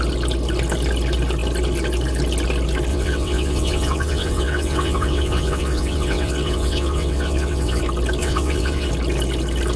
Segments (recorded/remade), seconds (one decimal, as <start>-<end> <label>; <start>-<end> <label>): 0.0-2.9 recorded; 2.9-7.8 remade; 7.8-8.2 recorded; 8.2-8.9 remade; 8.9-9.8 recorded